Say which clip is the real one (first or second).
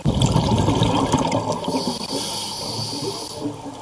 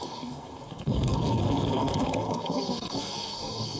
first